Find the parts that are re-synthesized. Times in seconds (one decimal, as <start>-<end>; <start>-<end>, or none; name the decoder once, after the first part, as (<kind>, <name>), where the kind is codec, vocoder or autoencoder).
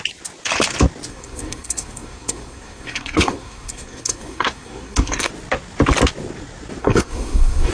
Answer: 1.1-5.3 (codec, SNAC); 6.8-7.7